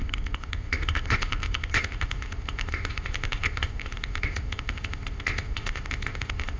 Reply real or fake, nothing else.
fake